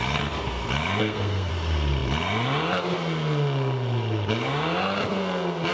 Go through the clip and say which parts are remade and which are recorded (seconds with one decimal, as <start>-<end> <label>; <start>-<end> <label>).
0.0-1.0 recorded; 1.0-1.5 remade; 1.5-5.7 recorded